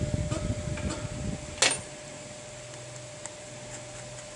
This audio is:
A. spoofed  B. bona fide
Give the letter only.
B